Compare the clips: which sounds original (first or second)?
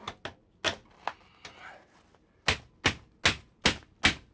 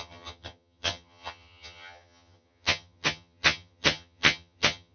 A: first